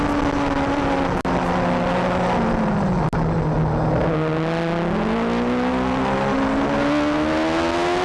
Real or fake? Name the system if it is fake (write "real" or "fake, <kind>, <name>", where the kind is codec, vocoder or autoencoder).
real